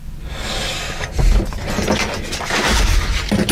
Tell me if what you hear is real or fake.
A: real